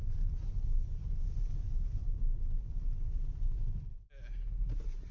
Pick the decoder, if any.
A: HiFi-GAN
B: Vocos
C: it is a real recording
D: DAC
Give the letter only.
C